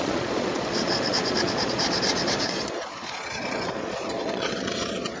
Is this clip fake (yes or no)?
yes